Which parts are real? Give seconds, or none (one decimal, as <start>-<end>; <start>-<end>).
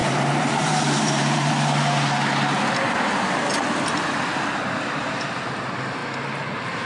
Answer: 1.5-4.3; 5.4-6.9